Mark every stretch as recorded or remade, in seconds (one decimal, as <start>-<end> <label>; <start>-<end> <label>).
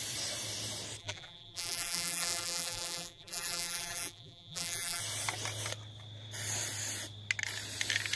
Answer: 0.0-1.0 recorded; 1.0-5.0 remade; 5.0-8.2 recorded